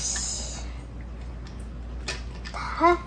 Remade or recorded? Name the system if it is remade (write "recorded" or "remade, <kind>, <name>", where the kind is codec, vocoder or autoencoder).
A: recorded